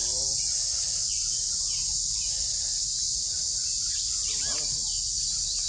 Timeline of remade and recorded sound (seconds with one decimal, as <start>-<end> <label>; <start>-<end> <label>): 0.0-5.7 recorded